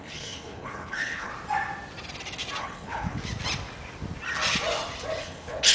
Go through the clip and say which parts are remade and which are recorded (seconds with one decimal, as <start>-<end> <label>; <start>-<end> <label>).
0.0-1.3 remade; 1.3-2.6 recorded; 2.6-3.2 remade; 3.2-5.2 recorded; 5.2-5.7 remade